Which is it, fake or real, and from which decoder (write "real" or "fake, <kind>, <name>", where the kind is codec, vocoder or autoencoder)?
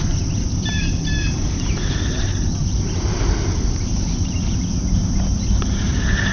real